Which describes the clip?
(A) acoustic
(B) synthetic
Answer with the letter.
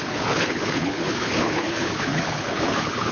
B